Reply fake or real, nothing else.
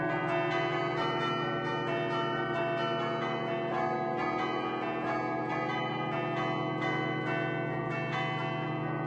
real